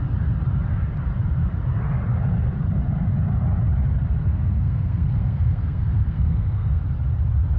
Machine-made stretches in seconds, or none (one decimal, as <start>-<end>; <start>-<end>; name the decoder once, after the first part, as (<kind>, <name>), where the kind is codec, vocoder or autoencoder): 4.2-6.8 (codec, SNAC)

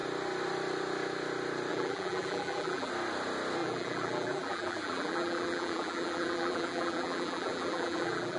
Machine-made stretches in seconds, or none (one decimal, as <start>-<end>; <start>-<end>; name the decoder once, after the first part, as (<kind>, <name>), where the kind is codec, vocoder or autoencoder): 1.7-2.9 (vocoder, BigVGAN v2); 3.6-8.4

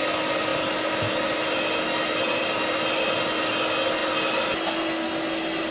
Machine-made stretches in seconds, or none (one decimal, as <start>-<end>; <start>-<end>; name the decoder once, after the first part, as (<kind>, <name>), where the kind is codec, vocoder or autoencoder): none

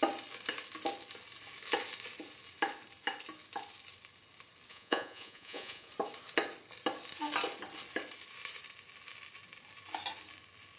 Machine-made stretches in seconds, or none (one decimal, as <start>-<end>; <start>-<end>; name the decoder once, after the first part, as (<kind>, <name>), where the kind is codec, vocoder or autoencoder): 4.7-5.9 (vocoder, Vocos)

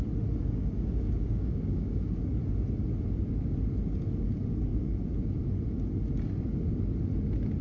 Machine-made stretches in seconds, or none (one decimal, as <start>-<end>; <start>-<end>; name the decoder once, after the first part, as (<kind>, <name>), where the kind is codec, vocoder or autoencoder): 0.4-2.3 (codec, DAC)

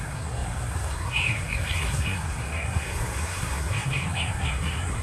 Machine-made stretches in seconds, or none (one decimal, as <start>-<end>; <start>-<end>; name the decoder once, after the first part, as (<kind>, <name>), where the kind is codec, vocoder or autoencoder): 0.0-5.0 (codec, SNAC)

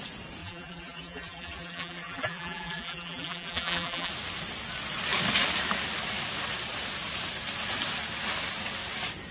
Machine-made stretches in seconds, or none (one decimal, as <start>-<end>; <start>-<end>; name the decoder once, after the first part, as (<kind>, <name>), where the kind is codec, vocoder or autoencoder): 0.4-4.1 (vocoder, BigVGAN v2)

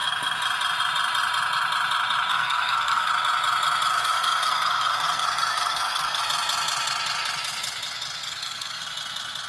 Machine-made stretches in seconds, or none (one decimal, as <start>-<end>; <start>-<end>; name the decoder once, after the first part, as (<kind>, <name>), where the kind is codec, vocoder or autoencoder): 2.3-3.1 (codec, SNAC); 3.9-6.2; 8.2-8.8